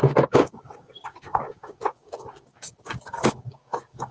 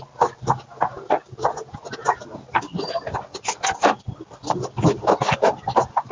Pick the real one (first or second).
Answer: second